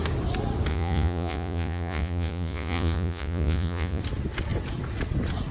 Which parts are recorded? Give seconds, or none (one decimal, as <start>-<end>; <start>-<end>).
0.0-0.7; 4.0-5.5